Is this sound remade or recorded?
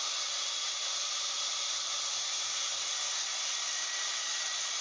recorded